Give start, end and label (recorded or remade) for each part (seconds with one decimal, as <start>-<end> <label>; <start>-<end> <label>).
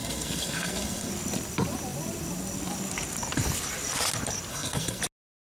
0.0-1.1 remade; 1.1-4.5 recorded; 4.5-5.0 remade; 5.0-5.4 recorded